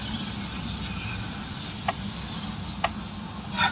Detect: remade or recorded recorded